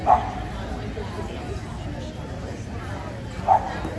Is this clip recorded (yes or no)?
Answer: yes